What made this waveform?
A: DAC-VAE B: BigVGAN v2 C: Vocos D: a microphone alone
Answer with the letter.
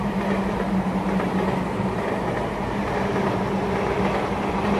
D